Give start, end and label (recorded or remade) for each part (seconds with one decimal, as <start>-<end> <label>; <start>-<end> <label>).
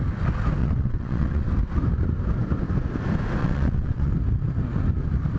0.0-0.6 recorded; 0.6-1.5 remade; 1.5-3.4 recorded; 3.4-4.1 remade; 4.1-5.4 recorded